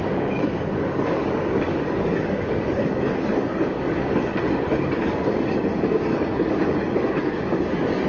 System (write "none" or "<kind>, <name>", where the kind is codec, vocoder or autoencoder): codec, DAC